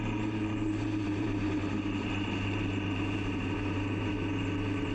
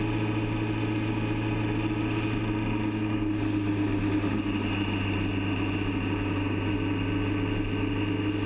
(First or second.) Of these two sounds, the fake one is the first